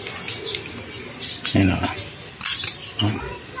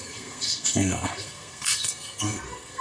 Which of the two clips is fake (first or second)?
second